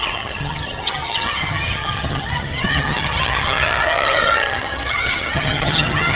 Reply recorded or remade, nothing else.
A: remade